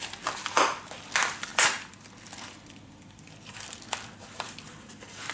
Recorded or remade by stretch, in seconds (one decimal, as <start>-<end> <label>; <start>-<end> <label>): 0.0-1.5 recorded; 1.5-4.7 remade; 4.7-5.3 recorded

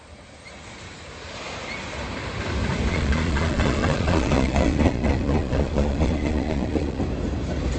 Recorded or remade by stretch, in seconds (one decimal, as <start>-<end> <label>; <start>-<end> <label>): 0.0-2.9 recorded; 2.9-7.0 remade; 7.0-7.8 recorded

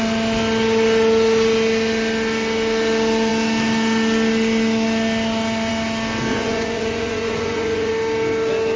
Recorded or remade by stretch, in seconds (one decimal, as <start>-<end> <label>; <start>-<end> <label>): 0.0-6.3 recorded; 6.3-7.9 remade; 7.9-8.8 recorded

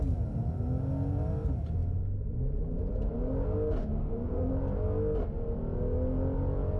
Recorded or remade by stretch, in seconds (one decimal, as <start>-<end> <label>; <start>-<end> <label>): 0.0-3.8 recorded; 3.8-4.5 remade; 4.5-6.8 recorded